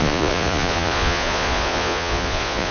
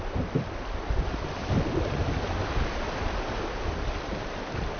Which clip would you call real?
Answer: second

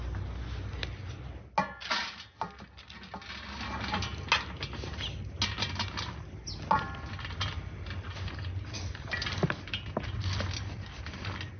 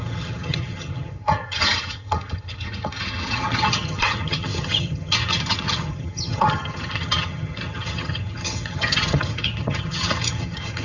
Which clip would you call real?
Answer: first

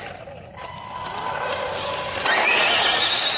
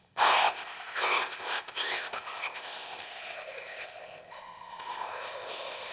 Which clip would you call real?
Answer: first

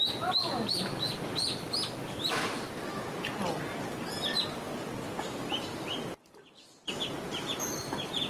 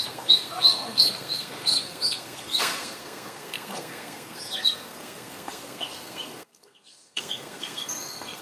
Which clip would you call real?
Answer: first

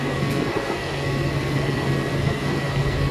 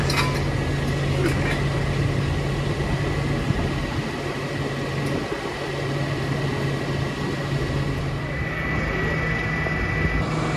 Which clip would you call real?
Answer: second